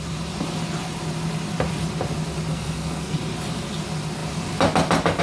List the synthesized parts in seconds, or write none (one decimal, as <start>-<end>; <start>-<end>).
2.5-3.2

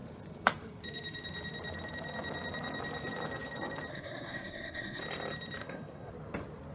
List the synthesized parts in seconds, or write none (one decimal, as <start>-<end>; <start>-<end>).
3.9-5.0; 5.6-6.1

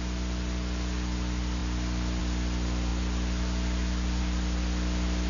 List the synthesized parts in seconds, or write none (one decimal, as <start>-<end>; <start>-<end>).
none

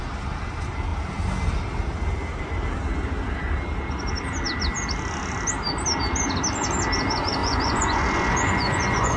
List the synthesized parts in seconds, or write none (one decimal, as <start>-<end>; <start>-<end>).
7.4-9.2

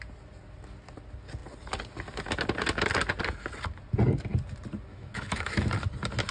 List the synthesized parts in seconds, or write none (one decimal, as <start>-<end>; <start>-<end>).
4.9-5.7